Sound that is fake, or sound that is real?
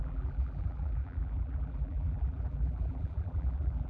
fake